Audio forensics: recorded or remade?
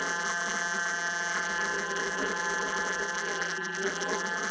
remade